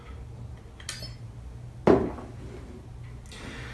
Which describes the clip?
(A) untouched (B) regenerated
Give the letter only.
A